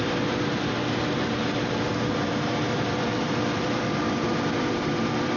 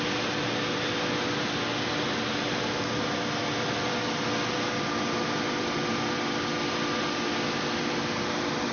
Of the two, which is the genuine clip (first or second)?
second